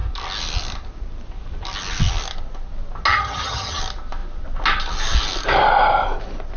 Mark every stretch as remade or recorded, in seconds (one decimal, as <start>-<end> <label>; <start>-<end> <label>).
0.0-3.1 recorded; 3.1-3.8 remade; 3.8-6.6 recorded

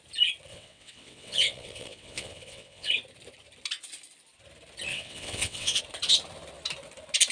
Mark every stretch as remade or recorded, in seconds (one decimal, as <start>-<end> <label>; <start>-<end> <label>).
0.0-0.5 recorded; 0.5-2.9 remade; 2.9-4.9 recorded; 4.9-5.8 remade; 5.8-7.3 recorded

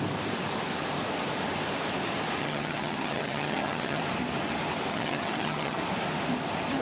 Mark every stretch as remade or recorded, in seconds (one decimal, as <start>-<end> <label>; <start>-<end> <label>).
0.0-2.4 recorded; 2.4-4.0 remade; 4.0-4.9 recorded; 4.9-5.8 remade; 5.8-6.8 recorded

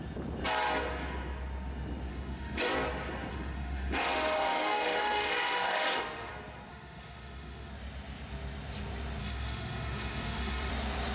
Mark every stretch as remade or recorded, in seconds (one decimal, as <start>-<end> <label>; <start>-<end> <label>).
0.0-2.1 recorded; 2.1-2.7 remade; 2.7-3.3 recorded; 3.3-6.3 remade; 6.3-6.7 recorded; 6.7-7.7 remade; 7.7-9.2 recorded; 9.2-10.7 remade; 10.7-11.1 recorded